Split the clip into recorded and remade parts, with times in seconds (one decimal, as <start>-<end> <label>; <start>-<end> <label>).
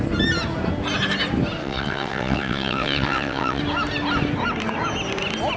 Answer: 0.0-1.6 recorded; 1.6-3.6 remade; 3.6-5.6 recorded